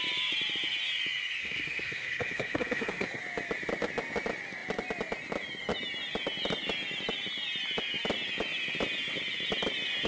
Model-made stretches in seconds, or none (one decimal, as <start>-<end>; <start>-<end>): 1.4-3.2